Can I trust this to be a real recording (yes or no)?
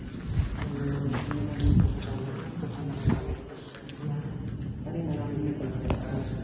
yes